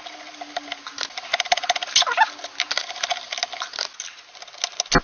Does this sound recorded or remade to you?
recorded